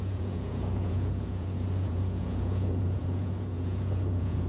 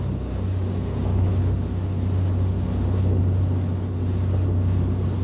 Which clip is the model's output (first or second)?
first